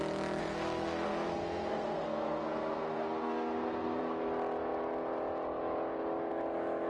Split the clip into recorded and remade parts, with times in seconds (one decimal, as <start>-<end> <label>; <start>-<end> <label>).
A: 0.0-0.4 recorded; 0.4-4.0 remade; 4.0-6.9 recorded